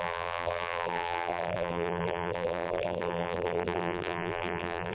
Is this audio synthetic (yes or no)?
yes